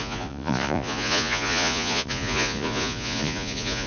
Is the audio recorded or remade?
remade